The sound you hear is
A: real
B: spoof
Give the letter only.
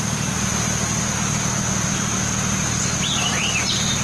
A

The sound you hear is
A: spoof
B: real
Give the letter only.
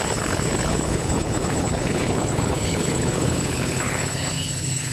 A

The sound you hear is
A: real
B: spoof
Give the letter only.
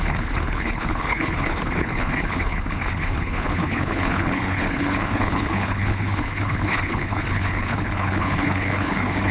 B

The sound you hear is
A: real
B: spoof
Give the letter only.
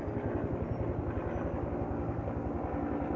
A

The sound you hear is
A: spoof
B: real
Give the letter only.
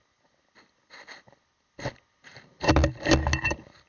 B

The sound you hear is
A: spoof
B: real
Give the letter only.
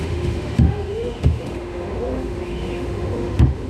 A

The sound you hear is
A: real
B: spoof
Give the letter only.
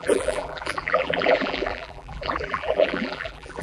B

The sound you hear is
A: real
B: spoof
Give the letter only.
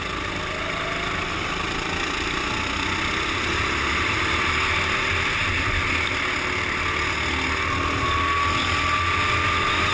A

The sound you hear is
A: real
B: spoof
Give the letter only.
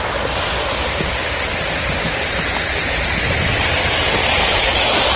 A